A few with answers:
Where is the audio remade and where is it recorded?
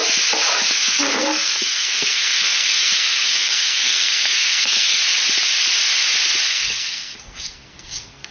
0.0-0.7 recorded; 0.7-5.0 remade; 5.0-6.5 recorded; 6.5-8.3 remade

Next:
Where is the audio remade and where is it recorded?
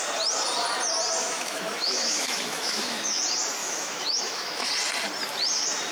0.0-1.2 recorded; 1.2-3.2 remade; 3.2-3.6 recorded; 3.6-4.7 remade; 4.7-5.9 recorded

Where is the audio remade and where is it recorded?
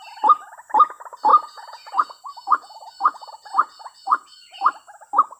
0.0-1.3 recorded; 1.3-4.5 remade; 4.5-5.4 recorded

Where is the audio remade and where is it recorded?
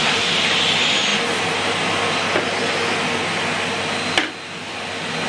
0.0-5.3 recorded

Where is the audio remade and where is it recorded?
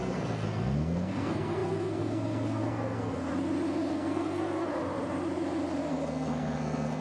0.0-3.3 remade; 3.3-3.9 recorded; 3.9-4.7 remade; 4.7-5.9 recorded; 5.9-7.0 remade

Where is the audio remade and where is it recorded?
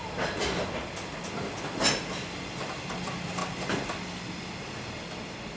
0.0-5.6 recorded